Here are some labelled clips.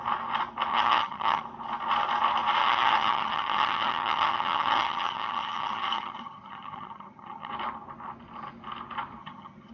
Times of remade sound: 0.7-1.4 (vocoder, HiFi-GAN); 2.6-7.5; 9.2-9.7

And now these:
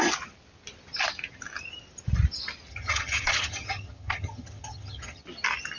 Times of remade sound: 2.7-5.2 (vocoder, HiFi-GAN)

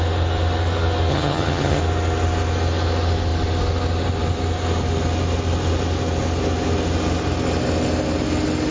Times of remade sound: 1.1-1.8 (vocoder, HiFi-GAN)